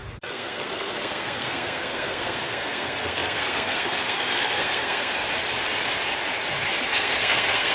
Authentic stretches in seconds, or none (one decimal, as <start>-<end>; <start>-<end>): 5.1-6.9